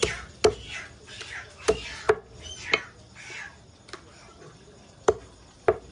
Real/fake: real